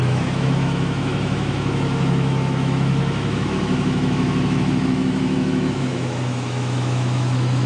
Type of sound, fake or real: fake